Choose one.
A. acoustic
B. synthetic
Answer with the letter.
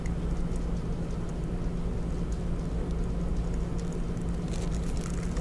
A